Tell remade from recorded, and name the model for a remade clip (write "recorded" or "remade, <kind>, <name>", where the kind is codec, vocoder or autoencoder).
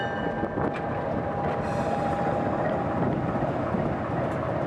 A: recorded